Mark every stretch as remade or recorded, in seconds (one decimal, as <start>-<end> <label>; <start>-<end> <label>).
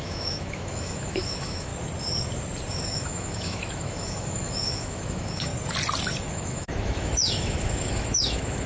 0.0-1.7 remade; 1.7-2.7 recorded; 2.7-5.5 remade; 5.5-6.3 recorded; 6.3-8.7 remade